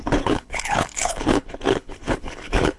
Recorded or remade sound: remade